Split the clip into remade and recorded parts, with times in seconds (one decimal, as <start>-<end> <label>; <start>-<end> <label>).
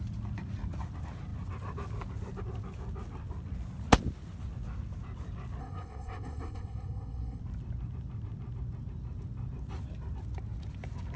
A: 0.0-5.6 recorded; 5.6-7.4 remade; 7.4-11.2 recorded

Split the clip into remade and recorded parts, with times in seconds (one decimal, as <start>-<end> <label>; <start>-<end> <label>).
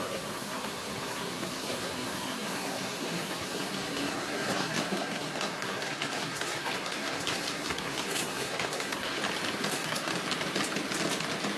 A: 0.0-9.2 remade; 9.2-9.7 recorded; 9.7-10.1 remade; 10.1-11.6 recorded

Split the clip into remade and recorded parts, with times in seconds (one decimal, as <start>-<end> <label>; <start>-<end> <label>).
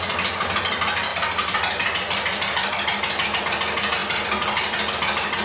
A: 0.0-5.4 recorded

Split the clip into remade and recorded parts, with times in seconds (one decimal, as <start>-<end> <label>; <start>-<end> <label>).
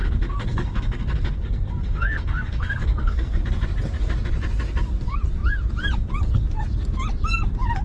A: 0.0-3.4 remade; 3.4-7.8 recorded